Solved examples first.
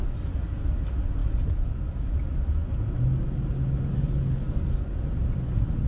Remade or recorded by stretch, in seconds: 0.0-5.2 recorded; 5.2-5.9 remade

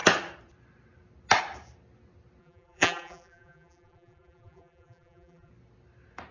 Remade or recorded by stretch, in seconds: 0.0-2.4 recorded; 2.4-5.5 remade; 5.5-6.3 recorded

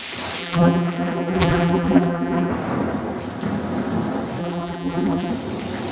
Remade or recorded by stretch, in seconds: 0.0-0.4 recorded; 0.4-2.5 remade; 2.5-4.4 recorded; 4.4-5.3 remade; 5.3-5.9 recorded

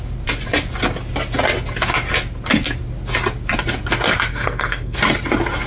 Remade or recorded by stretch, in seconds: 0.0-4.3 recorded; 4.3-5.0 remade; 5.0-5.7 recorded

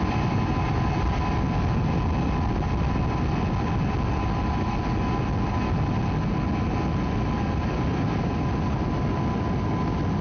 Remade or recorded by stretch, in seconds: 0.0-10.2 recorded

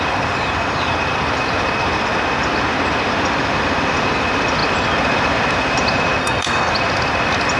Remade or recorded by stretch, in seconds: 0.0-6.2 recorded; 6.2-6.7 remade; 6.7-7.6 recorded

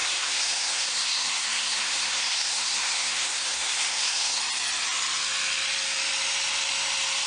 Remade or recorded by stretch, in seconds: 0.0-4.4 remade; 4.4-7.3 recorded

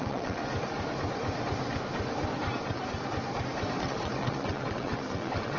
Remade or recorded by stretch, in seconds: 0.0-0.4 remade; 0.4-3.8 recorded; 3.8-5.6 remade